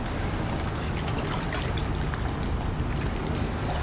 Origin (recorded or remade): recorded